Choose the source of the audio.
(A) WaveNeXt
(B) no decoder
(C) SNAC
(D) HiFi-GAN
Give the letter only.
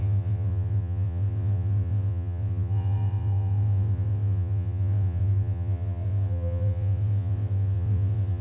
A